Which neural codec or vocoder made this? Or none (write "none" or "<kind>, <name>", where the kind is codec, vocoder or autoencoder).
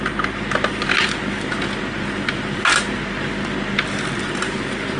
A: none